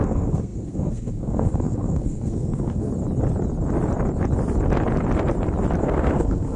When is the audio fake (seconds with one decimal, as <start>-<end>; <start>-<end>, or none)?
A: 0.0-2.9; 5.8-6.6